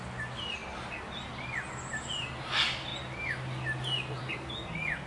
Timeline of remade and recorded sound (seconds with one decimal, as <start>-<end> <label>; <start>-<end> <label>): 0.0-5.1 recorded